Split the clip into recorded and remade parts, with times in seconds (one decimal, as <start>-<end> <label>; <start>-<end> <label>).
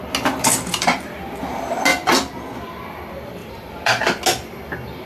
0.0-0.5 recorded; 0.5-1.2 remade; 1.2-3.4 recorded; 3.4-4.0 remade; 4.0-5.1 recorded